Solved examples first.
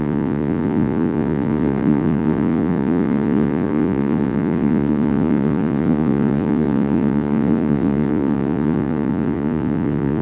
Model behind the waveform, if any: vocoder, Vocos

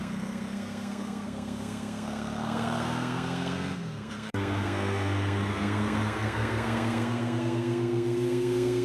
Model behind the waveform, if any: codec, SNAC